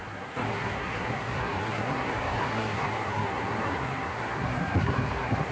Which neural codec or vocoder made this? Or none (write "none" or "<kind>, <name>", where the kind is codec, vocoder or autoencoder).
codec, SNAC